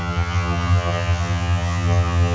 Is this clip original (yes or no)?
no